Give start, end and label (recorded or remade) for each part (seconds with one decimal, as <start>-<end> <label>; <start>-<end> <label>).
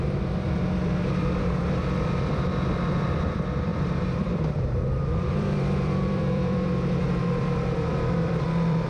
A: 0.0-8.9 remade